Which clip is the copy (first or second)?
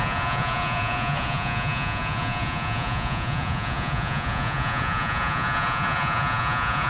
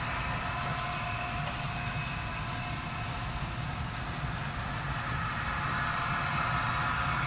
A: first